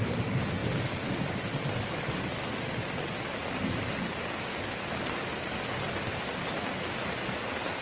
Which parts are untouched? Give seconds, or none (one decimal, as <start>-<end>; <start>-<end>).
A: 0.0-7.8